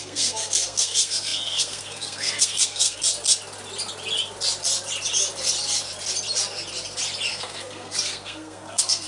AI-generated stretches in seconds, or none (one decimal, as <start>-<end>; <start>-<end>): 0.0-3.0; 7.3-9.1